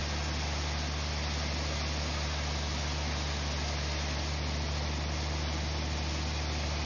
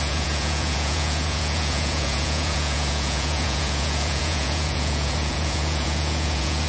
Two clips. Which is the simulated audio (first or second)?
second